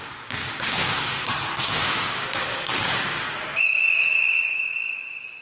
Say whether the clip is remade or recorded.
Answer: remade